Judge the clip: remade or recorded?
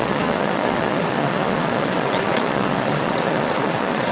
remade